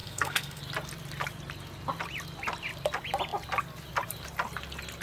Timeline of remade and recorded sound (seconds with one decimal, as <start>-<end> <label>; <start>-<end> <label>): 0.0-0.6 remade; 0.6-5.0 recorded